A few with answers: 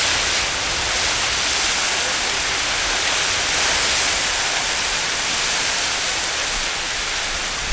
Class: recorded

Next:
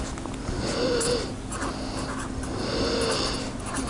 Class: recorded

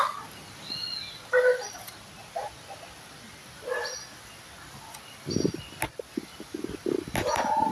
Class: recorded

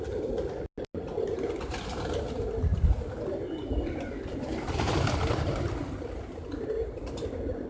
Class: recorded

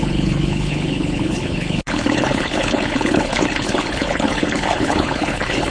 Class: remade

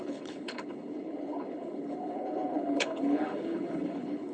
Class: remade